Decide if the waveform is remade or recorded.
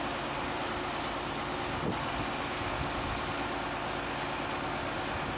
recorded